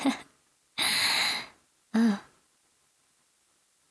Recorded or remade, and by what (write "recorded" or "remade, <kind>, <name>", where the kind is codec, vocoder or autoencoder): recorded